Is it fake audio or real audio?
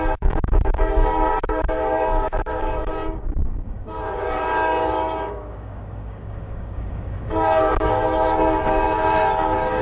fake